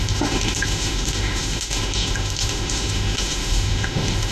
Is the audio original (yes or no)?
no